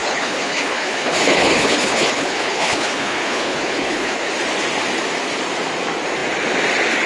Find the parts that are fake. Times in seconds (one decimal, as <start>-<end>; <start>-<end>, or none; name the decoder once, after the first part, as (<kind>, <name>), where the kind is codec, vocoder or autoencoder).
0.0-4.3 (codec, HILCodec)